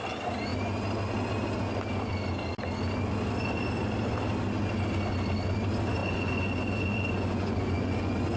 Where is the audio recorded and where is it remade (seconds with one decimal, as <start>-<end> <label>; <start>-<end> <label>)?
0.0-6.0 recorded; 6.0-8.4 remade